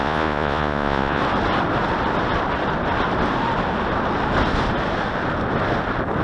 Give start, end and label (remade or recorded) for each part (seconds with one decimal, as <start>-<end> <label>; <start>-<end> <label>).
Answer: 0.0-1.2 remade; 1.2-6.2 recorded